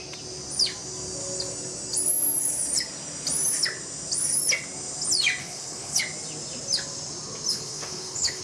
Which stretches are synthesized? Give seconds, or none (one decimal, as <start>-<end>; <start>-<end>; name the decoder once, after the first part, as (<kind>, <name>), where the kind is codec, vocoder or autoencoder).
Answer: 5.4-6.0 (codec, HILCodec); 7.5-8.4